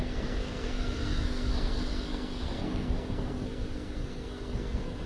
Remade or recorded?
remade